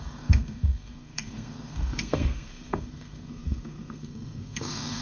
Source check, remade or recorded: remade